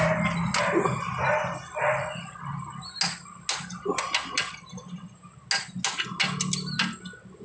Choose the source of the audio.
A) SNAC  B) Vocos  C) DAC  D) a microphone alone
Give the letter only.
D